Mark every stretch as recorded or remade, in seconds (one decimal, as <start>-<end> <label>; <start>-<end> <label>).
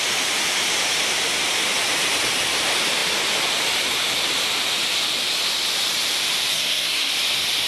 0.0-6.5 recorded; 6.5-7.1 remade; 7.1-7.7 recorded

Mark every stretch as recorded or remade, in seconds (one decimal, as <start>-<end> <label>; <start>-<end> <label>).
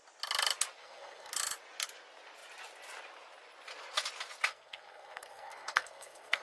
0.0-0.8 recorded; 0.8-1.3 remade; 1.3-4.5 recorded; 4.5-6.4 remade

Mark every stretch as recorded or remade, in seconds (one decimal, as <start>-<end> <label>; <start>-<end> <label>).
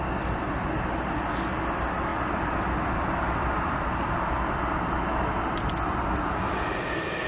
0.0-7.3 recorded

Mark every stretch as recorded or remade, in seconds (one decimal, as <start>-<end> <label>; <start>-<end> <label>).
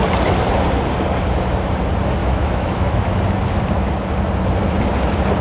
0.0-2.2 recorded; 2.2-3.2 remade; 3.2-5.4 recorded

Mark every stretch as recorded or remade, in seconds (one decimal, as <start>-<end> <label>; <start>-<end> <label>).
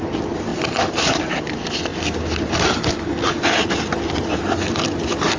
0.0-0.5 recorded; 0.5-1.5 remade; 1.5-5.4 recorded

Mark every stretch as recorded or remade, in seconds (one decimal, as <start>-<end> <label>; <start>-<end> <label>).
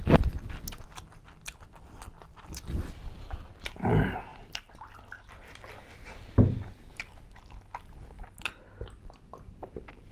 0.0-2.3 recorded; 2.3-2.9 remade; 2.9-10.1 recorded